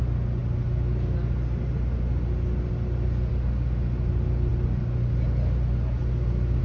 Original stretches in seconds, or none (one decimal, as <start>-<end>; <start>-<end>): 0.0-6.6